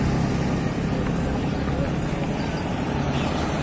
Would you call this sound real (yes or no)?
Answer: yes